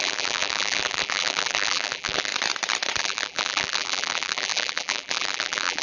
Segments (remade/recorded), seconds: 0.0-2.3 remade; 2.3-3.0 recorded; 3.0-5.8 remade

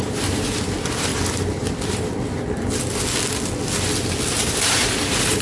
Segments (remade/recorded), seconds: 0.0-1.1 remade; 1.1-4.3 recorded; 4.3-5.4 remade

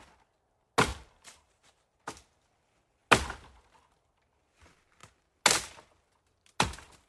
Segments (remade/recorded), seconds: 0.0-0.9 recorded; 0.9-1.7 remade; 1.7-7.1 recorded

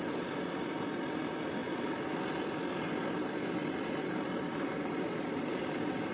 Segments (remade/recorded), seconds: 0.0-3.6 recorded; 3.6-6.1 remade

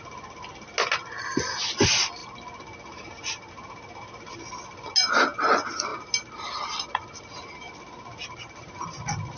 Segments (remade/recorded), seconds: 0.0-9.4 recorded

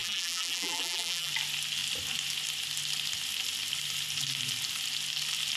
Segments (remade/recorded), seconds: 0.0-1.3 remade; 1.3-5.6 recorded